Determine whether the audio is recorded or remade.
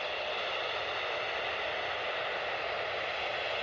recorded